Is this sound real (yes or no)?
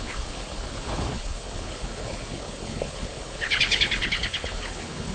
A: no